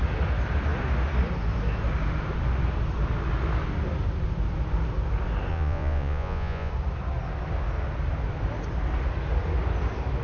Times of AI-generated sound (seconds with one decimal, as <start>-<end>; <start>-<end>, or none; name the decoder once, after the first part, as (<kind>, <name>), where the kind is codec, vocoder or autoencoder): 5.5-6.7 (vocoder, Vocos)